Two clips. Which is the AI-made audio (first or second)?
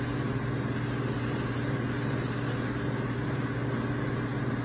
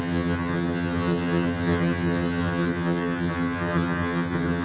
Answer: second